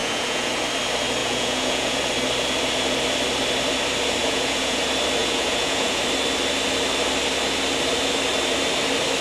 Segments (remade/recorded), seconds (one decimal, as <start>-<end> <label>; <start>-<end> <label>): 0.0-0.6 remade; 0.6-1.2 recorded; 1.2-2.0 remade; 2.0-4.2 recorded; 4.2-4.8 remade; 4.8-5.2 recorded; 5.2-6.0 remade; 6.0-9.2 recorded

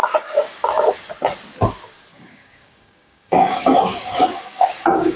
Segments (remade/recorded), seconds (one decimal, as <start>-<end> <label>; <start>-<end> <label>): 0.0-1.0 remade; 1.0-2.1 recorded; 2.1-5.2 remade